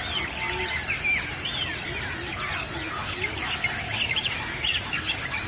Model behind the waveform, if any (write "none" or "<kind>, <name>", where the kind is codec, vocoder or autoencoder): none